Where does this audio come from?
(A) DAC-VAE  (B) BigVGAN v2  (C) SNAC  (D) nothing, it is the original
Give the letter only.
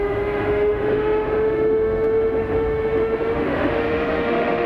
A